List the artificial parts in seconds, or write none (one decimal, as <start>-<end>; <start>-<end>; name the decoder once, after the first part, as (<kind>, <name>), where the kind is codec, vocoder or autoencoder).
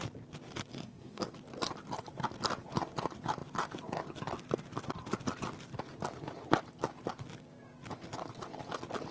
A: 0.7-1.3 (codec, SNAC)